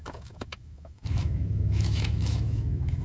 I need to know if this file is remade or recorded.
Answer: remade